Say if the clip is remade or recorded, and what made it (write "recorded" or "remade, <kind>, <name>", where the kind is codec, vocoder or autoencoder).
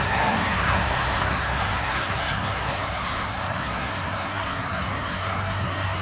remade, codec, SNAC